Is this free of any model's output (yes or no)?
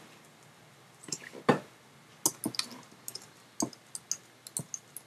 yes